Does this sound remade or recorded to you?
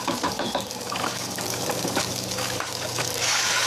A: remade